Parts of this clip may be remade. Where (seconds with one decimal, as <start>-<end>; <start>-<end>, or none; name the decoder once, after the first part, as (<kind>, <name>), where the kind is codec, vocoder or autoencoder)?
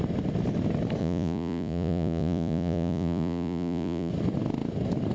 1.0-4.1 (vocoder, Vocos)